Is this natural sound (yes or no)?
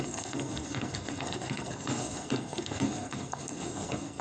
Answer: no